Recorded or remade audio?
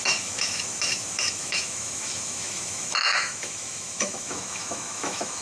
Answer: remade